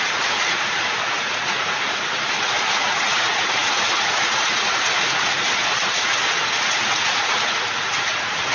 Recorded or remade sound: remade